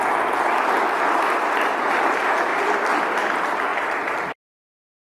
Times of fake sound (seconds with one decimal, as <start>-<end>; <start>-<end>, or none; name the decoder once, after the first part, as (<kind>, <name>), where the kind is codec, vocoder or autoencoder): none